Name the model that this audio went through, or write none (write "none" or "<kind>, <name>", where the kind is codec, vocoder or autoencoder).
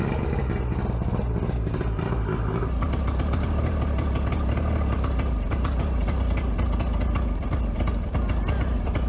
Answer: none